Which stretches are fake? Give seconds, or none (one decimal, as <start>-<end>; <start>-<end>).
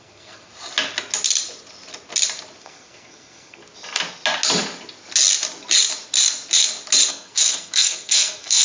0.0-0.5; 2.6-3.6; 7.1-8.6